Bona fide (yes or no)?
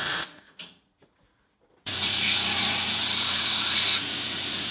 no